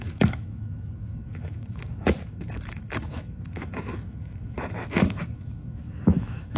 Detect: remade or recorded remade